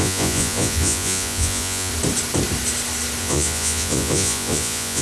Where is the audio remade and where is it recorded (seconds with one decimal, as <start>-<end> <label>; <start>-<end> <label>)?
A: 0.0-1.9 remade; 1.9-3.2 recorded; 3.2-5.0 remade